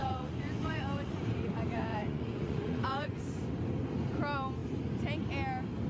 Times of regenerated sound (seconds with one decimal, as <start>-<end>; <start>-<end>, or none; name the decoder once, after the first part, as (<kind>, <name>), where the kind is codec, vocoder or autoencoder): 0.0-1.2 (vocoder, Vocos); 1.9-3.2